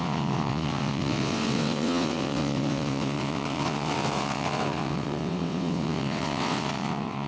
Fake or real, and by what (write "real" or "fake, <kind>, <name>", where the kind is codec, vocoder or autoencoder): fake, vocoder, WaveNeXt